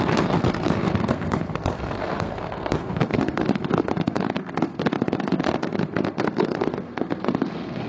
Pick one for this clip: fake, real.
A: fake